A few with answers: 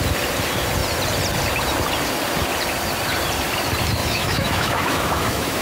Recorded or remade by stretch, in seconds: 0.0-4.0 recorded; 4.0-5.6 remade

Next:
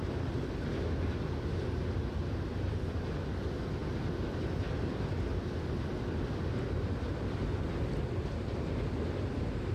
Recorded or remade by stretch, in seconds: 0.0-9.7 recorded

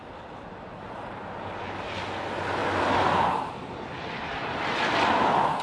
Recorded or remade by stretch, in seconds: 0.0-5.6 recorded

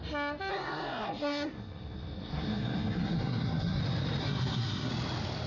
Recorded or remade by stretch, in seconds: 0.0-0.5 recorded; 0.5-3.8 remade; 3.8-4.2 recorded; 4.2-4.9 remade; 4.9-5.5 recorded